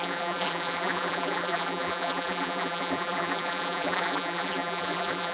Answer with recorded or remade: remade